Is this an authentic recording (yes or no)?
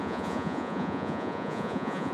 no